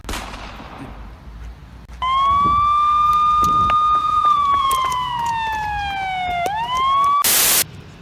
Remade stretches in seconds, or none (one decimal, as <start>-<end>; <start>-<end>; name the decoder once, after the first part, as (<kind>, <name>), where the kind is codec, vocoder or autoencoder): 4.0-5.3 (vocoder, Vocos)